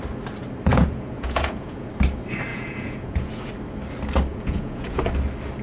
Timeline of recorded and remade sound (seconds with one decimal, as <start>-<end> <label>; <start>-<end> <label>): 0.0-0.7 recorded; 0.7-1.9 remade; 1.9-2.5 recorded; 2.5-3.5 remade; 3.5-4.3 recorded; 4.3-5.0 remade; 5.0-5.6 recorded